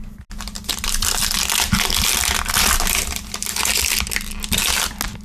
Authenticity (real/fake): real